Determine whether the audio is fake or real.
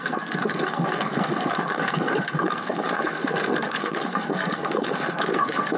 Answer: fake